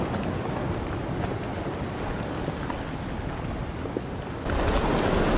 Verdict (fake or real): real